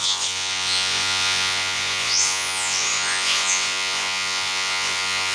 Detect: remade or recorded remade